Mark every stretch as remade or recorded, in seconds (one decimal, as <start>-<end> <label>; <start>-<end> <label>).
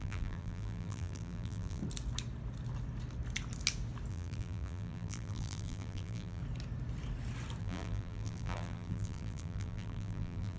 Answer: 0.0-1.8 remade; 1.8-4.1 recorded; 4.1-6.4 remade; 6.4-7.6 recorded; 7.6-10.6 remade